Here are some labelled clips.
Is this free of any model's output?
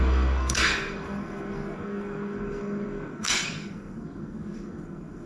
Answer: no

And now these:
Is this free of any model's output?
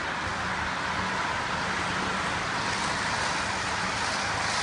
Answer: yes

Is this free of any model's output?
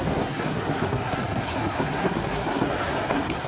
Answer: no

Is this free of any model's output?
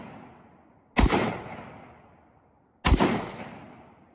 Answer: yes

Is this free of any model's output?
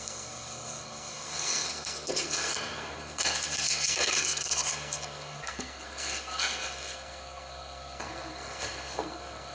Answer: no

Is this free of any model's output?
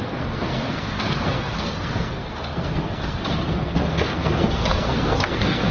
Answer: no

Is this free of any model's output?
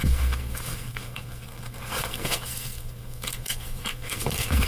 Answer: no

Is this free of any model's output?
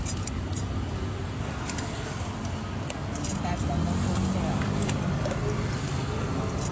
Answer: yes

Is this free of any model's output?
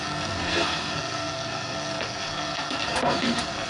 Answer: no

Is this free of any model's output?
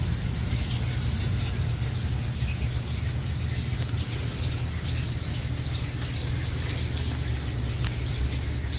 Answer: yes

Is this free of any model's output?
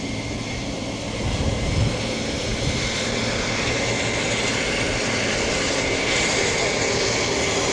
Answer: yes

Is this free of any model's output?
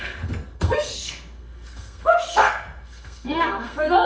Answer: no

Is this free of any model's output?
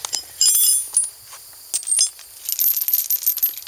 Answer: yes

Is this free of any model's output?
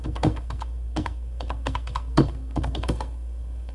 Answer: no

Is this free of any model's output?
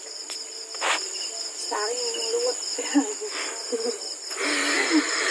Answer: yes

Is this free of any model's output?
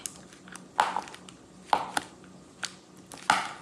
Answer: yes